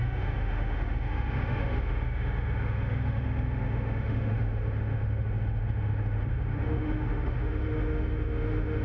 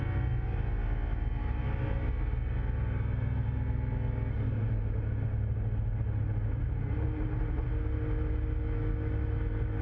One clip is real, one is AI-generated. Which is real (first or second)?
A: second